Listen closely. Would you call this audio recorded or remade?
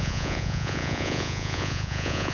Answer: remade